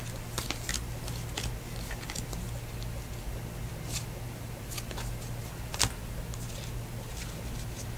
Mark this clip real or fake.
real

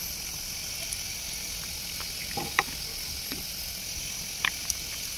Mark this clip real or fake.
real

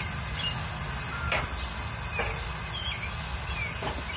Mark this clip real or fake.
real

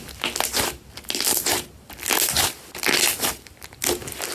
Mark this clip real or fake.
real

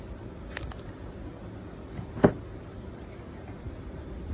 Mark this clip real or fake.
real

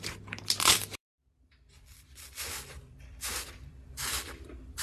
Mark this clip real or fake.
fake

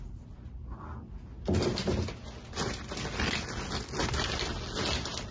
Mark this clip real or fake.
real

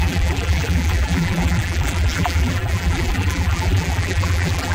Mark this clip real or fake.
fake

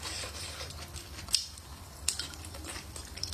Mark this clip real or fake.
fake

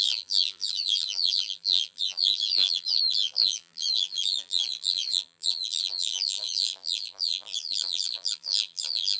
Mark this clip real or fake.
fake